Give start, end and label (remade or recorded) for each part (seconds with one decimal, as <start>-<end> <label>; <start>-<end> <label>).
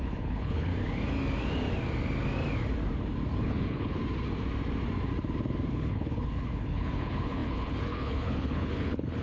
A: 0.0-0.7 remade; 0.7-3.4 recorded; 3.4-4.0 remade; 4.0-5.7 recorded; 5.7-9.2 remade